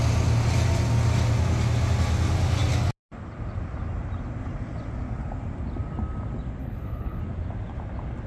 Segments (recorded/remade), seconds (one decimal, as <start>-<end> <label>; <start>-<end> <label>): 0.0-6.6 recorded; 6.6-7.2 remade; 7.2-8.3 recorded